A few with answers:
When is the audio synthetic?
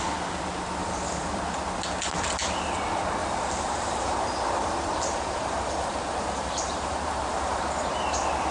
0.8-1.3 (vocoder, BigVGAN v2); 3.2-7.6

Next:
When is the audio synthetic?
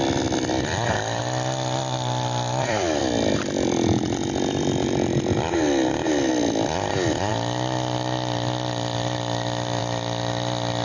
1.2-6.3 (vocoder, BigVGAN v2); 7.3-9.8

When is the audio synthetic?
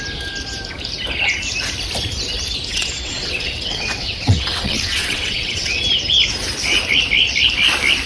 2.7-5.8 (vocoder, WaveNeXt)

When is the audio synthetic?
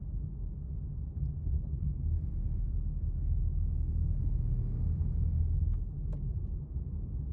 1.4-1.9 (codec, HILCodec)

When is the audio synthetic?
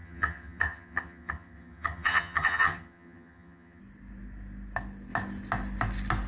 0.0-3.8 (vocoder, HiFi-GAN)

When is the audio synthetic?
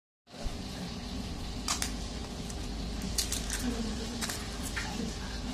none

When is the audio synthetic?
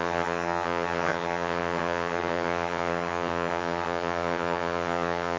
0.0-5.4 (vocoder, HiFi-GAN)